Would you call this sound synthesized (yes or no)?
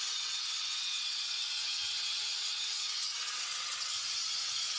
yes